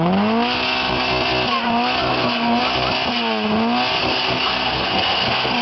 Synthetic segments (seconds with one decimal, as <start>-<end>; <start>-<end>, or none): 2.1-2.6; 4.0-5.6